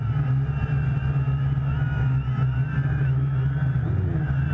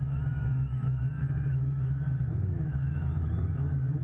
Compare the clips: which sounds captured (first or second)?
first